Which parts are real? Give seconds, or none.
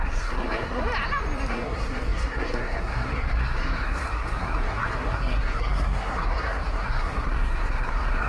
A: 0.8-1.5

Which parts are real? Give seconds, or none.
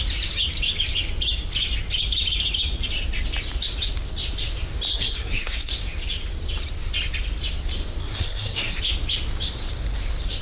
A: 0.0-4.9; 5.7-8.0; 8.8-10.4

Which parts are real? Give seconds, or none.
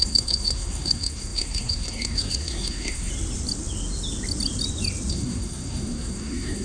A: 3.1-5.1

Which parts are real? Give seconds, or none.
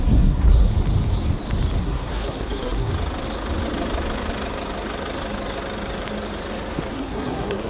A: 0.7-1.8; 2.9-6.9